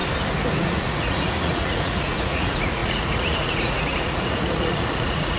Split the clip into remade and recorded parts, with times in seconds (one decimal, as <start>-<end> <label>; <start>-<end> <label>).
0.0-0.6 recorded; 0.6-5.4 remade